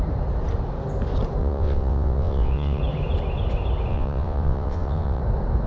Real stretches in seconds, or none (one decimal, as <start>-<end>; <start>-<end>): 0.0-1.4; 2.8-3.9; 5.2-5.7